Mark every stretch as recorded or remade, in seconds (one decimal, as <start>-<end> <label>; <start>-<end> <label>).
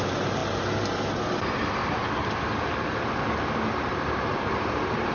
0.0-0.4 remade; 0.4-1.4 recorded; 1.4-1.8 remade; 1.8-3.7 recorded; 3.7-5.1 remade